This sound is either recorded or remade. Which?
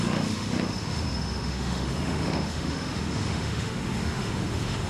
remade